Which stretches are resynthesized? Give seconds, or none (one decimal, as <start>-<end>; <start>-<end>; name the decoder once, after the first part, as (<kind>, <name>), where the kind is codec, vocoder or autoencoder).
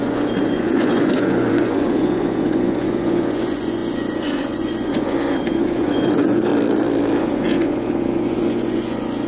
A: 0.0-6.5 (vocoder, Vocos); 7.2-9.3